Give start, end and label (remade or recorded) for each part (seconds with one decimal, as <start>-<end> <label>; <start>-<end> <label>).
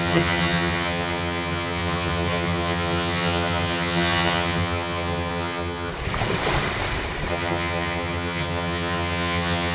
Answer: 0.0-5.9 remade; 5.9-7.3 recorded; 7.3-9.7 remade